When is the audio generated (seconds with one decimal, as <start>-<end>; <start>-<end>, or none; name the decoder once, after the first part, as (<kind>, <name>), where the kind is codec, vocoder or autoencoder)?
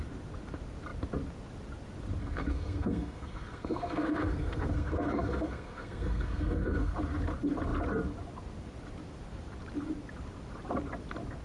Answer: 2.2-6.9 (codec, SNAC)